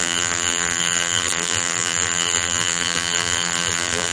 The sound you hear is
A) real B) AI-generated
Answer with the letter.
B